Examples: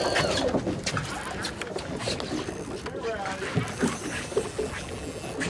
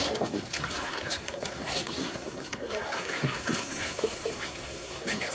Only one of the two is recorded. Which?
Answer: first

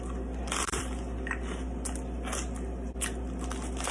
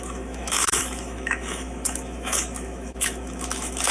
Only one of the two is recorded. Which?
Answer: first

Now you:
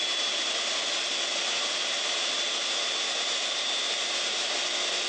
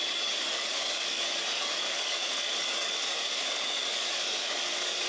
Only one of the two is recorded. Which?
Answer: first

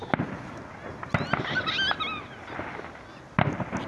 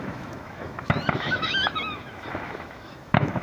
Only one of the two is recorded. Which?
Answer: first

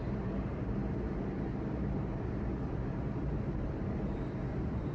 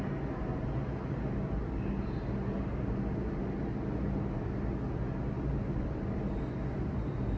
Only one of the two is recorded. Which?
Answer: second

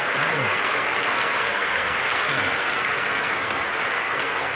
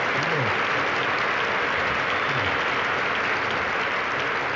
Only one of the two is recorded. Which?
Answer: second